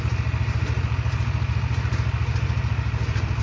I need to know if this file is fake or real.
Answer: real